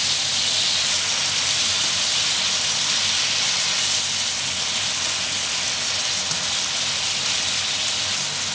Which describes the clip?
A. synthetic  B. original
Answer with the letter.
B